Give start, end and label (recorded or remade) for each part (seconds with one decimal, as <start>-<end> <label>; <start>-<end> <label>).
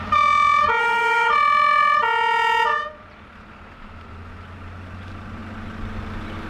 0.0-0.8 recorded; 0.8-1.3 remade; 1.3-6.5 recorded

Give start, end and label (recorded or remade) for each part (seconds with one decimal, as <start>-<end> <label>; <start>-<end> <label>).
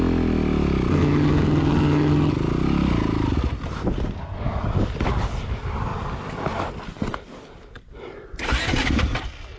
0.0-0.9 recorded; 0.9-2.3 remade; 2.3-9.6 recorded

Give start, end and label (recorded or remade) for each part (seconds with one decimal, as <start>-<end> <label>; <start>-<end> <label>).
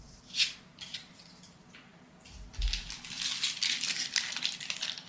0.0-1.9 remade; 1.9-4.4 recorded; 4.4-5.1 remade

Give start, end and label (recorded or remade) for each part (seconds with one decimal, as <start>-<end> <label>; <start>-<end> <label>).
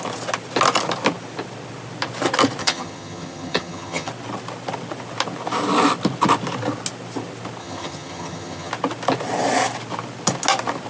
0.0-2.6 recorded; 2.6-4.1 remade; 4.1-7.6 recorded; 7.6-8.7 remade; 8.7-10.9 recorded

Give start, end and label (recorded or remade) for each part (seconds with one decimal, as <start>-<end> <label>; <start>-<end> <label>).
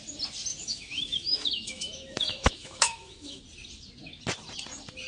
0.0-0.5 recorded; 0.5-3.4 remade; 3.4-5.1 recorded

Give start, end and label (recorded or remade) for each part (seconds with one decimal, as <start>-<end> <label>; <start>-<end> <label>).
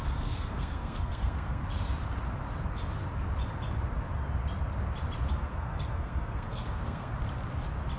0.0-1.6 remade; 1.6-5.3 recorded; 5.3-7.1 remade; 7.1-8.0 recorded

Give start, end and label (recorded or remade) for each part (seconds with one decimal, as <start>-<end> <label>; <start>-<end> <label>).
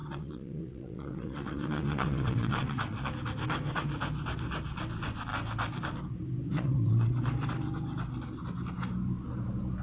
0.0-3.1 remade; 3.1-6.5 recorded; 6.5-7.1 remade; 7.1-9.8 recorded